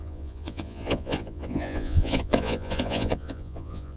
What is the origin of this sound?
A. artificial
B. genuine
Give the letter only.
A